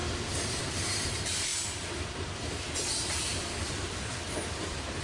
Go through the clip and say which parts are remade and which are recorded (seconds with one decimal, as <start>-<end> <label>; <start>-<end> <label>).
0.0-0.6 recorded; 0.6-1.5 remade; 1.5-4.5 recorded; 4.5-5.0 remade